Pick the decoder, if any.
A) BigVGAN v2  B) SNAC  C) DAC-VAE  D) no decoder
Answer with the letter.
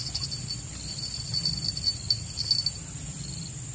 D